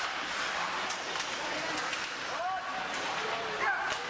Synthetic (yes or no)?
no